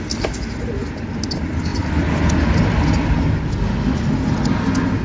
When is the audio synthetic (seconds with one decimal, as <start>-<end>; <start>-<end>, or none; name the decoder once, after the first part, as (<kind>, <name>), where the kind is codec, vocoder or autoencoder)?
none